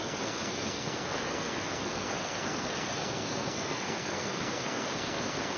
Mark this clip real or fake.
fake